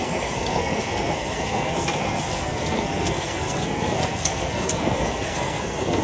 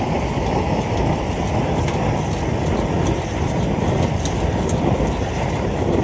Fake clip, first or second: first